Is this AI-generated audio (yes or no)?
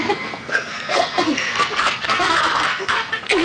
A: yes